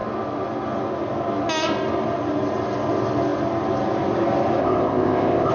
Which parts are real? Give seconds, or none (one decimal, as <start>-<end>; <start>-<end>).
0.0-4.6